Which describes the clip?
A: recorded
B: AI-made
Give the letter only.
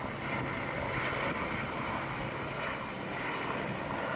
B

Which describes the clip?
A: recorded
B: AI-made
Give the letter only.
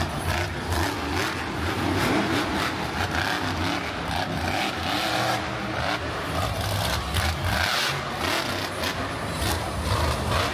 A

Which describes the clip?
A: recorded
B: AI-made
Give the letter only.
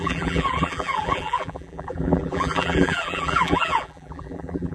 B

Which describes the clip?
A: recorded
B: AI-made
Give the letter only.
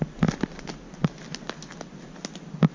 A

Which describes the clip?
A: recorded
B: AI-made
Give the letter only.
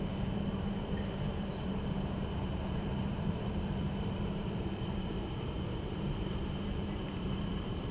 B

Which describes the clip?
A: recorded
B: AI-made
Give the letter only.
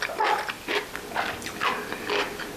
A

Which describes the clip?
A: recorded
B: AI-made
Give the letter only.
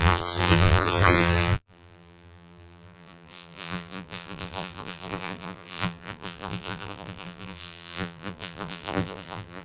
B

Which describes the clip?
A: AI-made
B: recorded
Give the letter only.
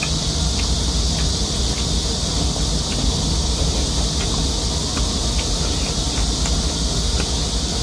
B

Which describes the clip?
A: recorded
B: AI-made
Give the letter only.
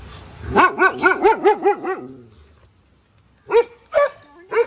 A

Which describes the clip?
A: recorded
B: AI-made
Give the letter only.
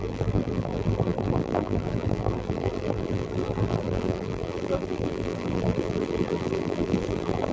B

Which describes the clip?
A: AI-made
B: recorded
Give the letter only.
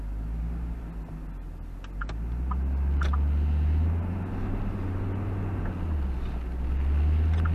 B